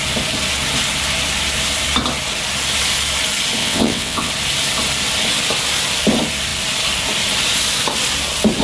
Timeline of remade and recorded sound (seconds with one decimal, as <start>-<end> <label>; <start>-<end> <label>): 0.0-3.6 recorded; 3.6-4.3 remade; 4.3-8.6 recorded